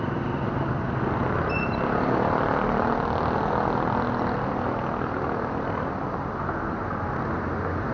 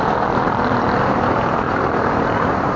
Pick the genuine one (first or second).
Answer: first